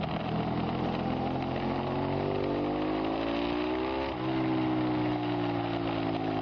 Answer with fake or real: real